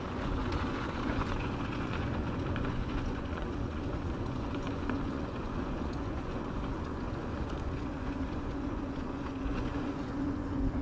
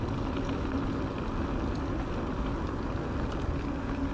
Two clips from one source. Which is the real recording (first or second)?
second